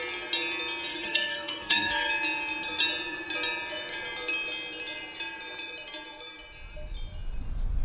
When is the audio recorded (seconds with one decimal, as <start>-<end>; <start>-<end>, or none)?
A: 0.0-0.9; 2.1-7.8